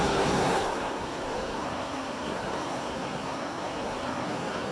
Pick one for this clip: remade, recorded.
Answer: remade